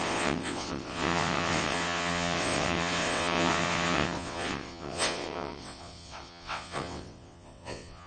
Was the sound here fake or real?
fake